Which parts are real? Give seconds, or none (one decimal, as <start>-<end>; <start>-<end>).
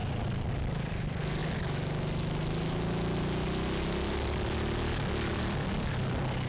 0.0-0.5; 1.4-5.3